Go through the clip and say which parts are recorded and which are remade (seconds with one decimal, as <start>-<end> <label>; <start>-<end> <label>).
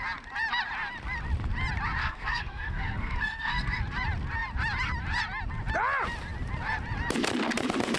0.0-2.0 recorded; 2.0-3.8 remade; 3.8-8.0 recorded